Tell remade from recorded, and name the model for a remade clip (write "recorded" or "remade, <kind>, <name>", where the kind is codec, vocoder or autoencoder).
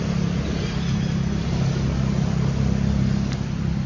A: recorded